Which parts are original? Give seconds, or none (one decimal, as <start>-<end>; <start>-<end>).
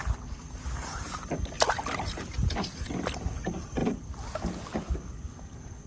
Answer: 0.0-5.9